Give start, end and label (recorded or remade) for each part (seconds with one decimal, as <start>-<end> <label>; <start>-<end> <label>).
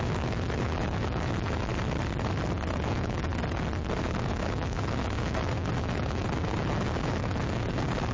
0.0-1.7 remade; 1.7-2.9 recorded; 2.9-3.3 remade; 3.3-4.0 recorded; 4.0-8.1 remade